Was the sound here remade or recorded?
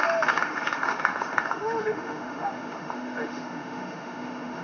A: remade